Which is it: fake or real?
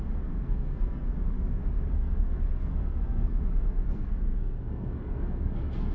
fake